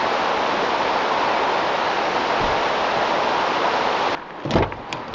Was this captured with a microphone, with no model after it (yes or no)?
yes